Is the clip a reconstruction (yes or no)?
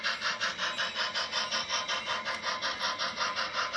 no